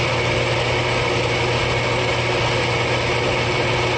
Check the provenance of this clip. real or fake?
real